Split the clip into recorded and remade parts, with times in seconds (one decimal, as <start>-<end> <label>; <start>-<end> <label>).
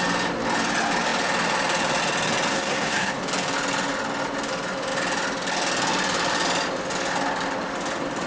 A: 0.0-2.5 recorded; 2.5-3.1 remade; 3.1-8.3 recorded